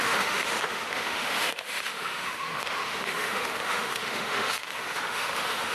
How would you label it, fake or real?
fake